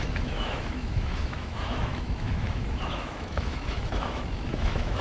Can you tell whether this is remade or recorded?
remade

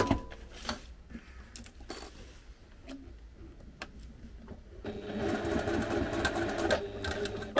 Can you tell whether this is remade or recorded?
recorded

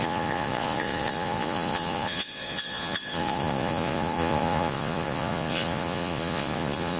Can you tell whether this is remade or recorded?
remade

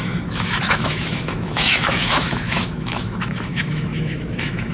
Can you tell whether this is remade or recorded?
remade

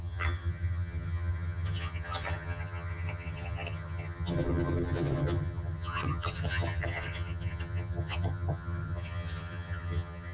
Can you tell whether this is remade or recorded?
remade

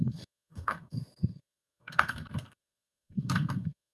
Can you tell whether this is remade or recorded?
remade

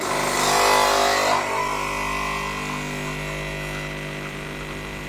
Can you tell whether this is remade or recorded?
recorded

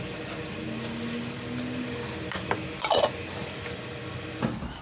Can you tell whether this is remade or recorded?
recorded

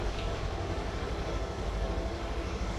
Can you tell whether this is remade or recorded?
remade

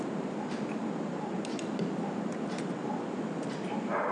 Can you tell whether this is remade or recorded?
recorded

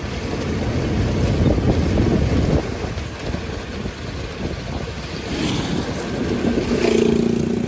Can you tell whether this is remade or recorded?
recorded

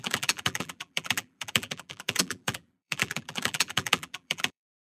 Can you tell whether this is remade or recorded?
remade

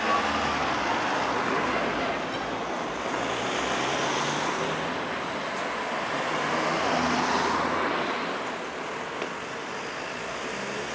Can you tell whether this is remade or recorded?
recorded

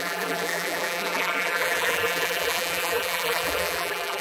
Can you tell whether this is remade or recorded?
remade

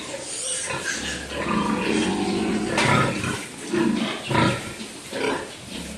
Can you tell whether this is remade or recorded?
recorded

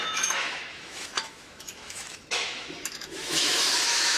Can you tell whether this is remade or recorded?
remade